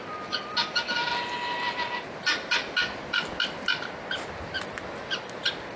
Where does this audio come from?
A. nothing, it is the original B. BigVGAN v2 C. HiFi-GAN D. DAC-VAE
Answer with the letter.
A